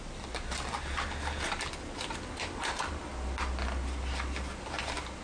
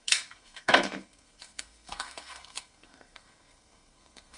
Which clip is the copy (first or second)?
second